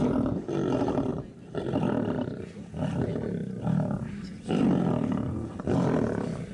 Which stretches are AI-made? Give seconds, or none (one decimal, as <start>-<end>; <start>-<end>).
none